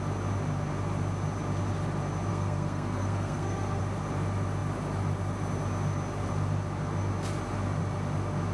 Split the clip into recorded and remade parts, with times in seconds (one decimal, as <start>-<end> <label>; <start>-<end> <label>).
0.0-2.3 recorded; 2.3-3.8 remade; 3.8-8.5 recorded